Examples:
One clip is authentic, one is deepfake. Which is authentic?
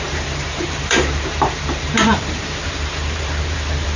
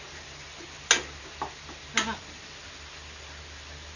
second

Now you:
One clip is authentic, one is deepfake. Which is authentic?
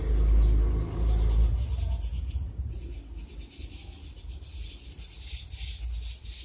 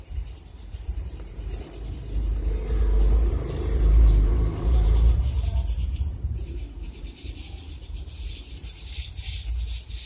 first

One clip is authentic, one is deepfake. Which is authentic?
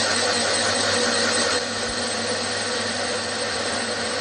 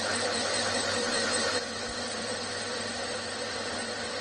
first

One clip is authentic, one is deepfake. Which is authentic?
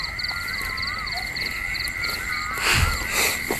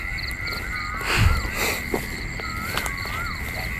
second